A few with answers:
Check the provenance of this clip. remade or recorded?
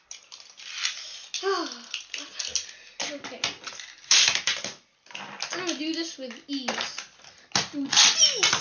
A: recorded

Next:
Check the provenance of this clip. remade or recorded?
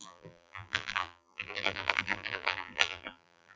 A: remade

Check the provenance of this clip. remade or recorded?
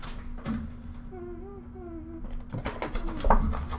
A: recorded